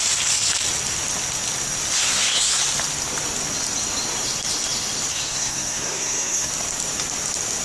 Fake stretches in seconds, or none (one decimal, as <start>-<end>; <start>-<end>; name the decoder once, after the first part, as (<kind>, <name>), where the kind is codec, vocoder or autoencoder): 2.0-2.6 (codec, SNAC); 5.1-6.5